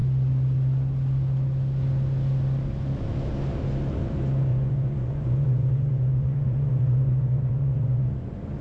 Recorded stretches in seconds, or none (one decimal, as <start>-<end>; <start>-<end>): 0.0-4.5

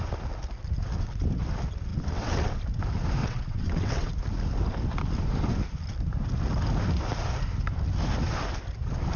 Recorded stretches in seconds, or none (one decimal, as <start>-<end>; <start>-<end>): 0.0-1.9; 2.6-3.2; 4.1-9.2

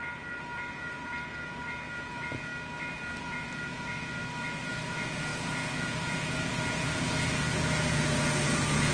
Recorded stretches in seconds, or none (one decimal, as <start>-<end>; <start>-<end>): 2.5-3.2; 4.2-4.7

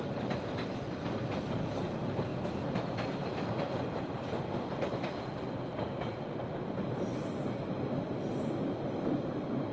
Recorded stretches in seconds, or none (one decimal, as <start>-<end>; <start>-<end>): 0.0-9.7

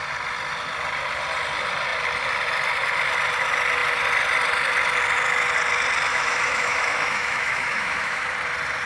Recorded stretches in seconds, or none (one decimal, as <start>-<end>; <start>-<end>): 0.0-6.1; 8.2-8.9

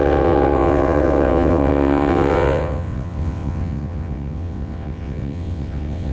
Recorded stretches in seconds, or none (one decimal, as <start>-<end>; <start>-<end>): none

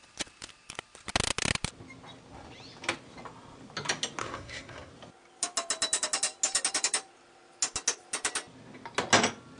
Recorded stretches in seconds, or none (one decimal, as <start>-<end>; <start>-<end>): 0.0-4.2; 4.9-9.6

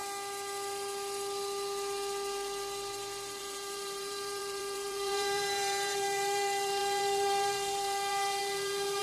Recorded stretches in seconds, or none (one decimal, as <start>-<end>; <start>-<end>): 0.0-3.4